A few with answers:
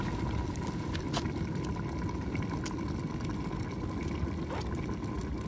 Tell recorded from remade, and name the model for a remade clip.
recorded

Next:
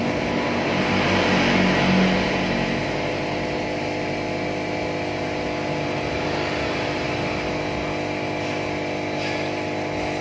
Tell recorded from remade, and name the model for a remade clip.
recorded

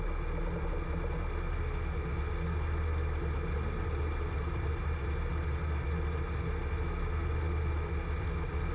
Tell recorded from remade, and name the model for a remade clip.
recorded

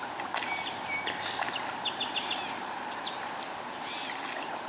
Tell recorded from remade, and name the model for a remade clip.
recorded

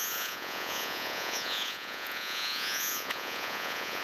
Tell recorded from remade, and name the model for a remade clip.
remade, vocoder, Vocos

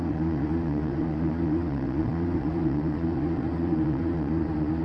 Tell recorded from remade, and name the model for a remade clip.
remade, vocoder, Vocos